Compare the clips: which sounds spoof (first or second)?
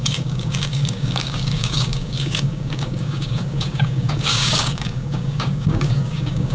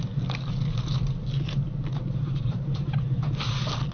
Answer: first